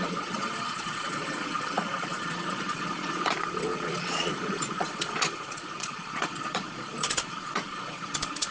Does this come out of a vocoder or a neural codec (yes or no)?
yes